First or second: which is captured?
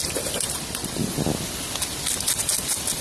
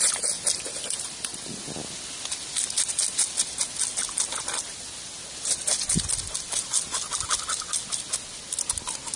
second